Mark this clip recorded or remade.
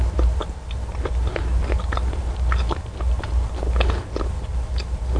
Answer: recorded